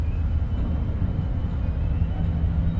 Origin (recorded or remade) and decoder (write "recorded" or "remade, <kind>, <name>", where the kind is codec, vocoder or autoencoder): recorded